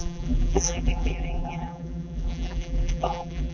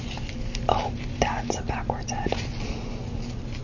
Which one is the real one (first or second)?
second